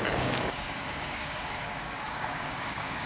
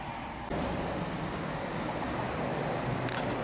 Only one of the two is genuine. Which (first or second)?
second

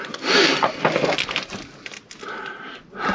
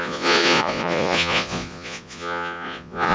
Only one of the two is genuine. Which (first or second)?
first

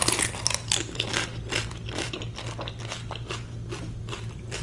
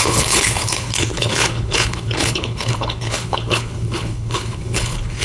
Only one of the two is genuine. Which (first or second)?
first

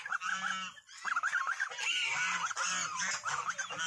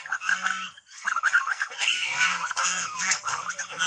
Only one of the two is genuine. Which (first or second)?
first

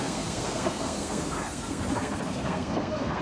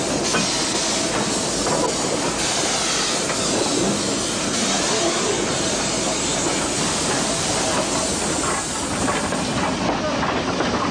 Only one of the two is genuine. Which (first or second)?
second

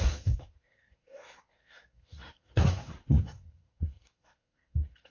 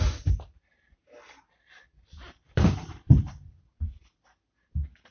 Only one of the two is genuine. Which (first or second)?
second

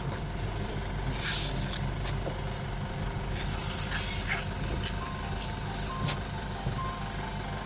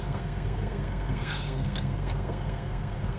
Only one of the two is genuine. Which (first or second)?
first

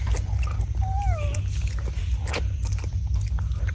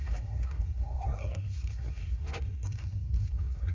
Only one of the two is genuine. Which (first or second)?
first